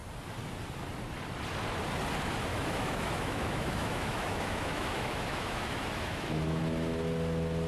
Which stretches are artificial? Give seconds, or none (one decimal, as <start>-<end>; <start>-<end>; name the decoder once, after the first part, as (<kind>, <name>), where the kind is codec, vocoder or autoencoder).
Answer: 2.5-6.6 (autoencoder, DAC-VAE)